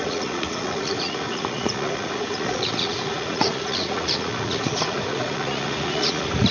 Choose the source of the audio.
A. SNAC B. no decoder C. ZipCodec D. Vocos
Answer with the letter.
D